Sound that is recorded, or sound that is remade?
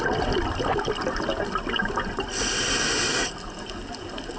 recorded